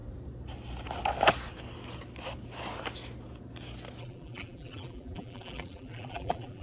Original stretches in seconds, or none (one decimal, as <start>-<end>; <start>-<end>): 0.0-4.0